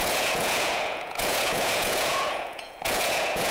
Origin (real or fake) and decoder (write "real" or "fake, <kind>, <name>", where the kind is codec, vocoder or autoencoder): fake, vocoder, Vocos